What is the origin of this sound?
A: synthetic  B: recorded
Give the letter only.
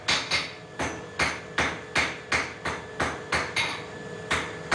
B